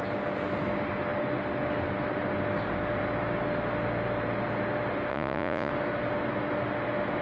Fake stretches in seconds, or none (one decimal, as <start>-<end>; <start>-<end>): 5.1-5.7